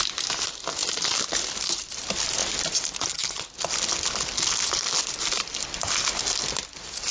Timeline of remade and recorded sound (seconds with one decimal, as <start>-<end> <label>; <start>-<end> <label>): 0.0-7.1 recorded

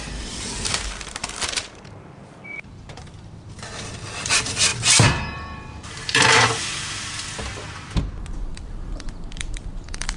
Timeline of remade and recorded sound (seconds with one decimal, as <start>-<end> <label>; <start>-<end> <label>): 0.0-1.2 recorded; 1.2-3.1 remade; 3.1-4.7 recorded; 4.7-6.5 remade; 6.5-8.5 recorded; 8.5-10.2 remade

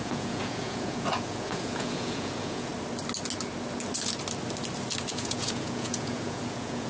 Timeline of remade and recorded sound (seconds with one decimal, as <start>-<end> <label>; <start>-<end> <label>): 0.0-2.7 remade; 2.7-5.1 recorded; 5.1-6.9 remade

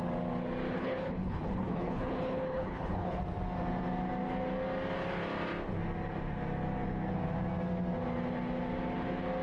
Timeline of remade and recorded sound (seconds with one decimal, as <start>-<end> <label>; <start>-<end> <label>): 0.0-0.7 recorded; 0.7-3.2 remade; 3.2-9.4 recorded

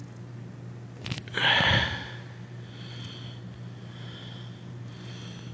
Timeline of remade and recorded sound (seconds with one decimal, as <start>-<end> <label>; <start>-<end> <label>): 0.0-5.5 recorded

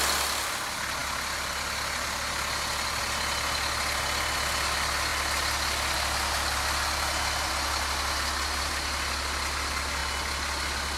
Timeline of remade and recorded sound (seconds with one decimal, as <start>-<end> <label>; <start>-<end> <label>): 0.0-11.0 recorded